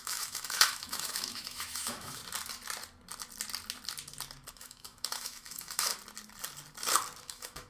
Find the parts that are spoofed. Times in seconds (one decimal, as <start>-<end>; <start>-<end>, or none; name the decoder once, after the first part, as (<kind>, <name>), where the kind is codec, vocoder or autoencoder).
0.0-2.2 (autoencoder, DAC-VAE); 4.5-5.9; 7.2-7.7